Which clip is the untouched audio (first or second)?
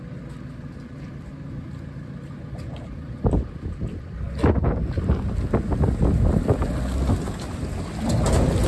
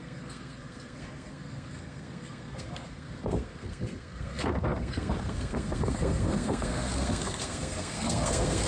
first